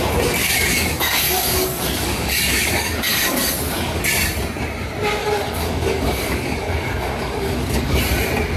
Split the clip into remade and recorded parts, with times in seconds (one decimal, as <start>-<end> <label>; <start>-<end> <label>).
0.0-0.4 recorded; 0.4-4.0 remade; 4.0-5.2 recorded; 5.2-8.0 remade; 8.0-8.6 recorded